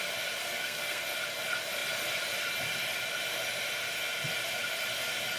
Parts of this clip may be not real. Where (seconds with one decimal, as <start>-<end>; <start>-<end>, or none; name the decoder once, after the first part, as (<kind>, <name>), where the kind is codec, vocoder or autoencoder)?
0.4-1.0 (codec, SNAC)